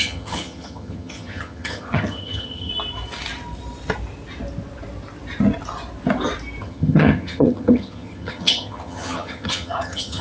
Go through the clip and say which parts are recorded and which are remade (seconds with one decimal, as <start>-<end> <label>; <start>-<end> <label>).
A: 0.0-2.7 remade; 2.7-6.6 recorded; 6.6-10.2 remade